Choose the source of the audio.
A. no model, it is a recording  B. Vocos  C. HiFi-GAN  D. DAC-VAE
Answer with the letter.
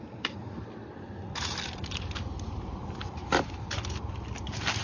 A